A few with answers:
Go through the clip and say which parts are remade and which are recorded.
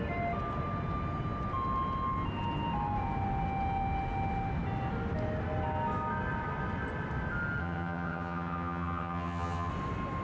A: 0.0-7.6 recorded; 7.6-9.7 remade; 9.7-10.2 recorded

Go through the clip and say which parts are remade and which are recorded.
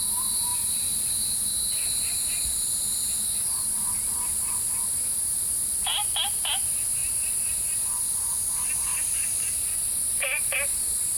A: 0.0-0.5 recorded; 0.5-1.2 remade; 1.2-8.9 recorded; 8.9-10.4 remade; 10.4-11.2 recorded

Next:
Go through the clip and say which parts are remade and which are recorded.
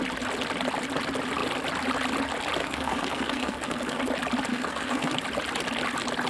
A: 0.0-2.6 recorded; 2.6-4.0 remade; 4.0-4.5 recorded; 4.5-5.1 remade; 5.1-6.3 recorded